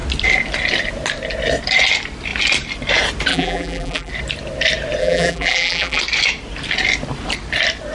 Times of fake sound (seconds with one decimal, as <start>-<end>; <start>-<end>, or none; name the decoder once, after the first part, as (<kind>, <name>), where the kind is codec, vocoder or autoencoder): 3.3-4.1 (vocoder, BigVGAN v2); 5.0-6.0

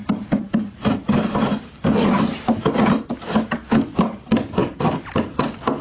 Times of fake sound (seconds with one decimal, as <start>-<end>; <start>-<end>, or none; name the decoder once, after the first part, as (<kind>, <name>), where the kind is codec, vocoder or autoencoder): 0.0-2.2 (vocoder, BigVGAN v2); 4.6-5.2

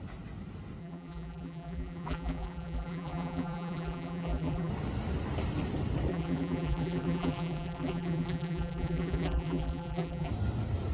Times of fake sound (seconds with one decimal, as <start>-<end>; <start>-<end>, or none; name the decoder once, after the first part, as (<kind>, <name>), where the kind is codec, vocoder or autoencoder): 0.8-4.7 (vocoder, BigVGAN v2); 6.1-10.3